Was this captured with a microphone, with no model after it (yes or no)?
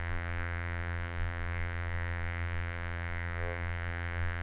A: no